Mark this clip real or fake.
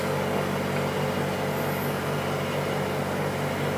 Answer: real